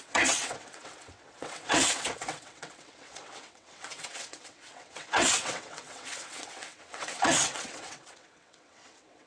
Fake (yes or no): yes